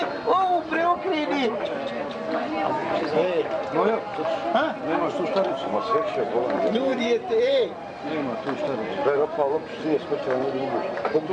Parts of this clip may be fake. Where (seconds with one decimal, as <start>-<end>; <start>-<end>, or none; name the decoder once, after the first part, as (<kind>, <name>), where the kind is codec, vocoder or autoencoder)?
2.8-3.4 (vocoder, BigVGAN v2); 6.9-7.8